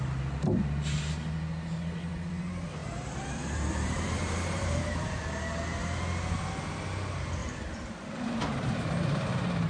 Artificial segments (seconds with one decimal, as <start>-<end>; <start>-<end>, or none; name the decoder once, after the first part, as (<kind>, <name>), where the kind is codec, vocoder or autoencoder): 2.8-5.2 (vocoder, BigVGAN v2); 7.4-8.9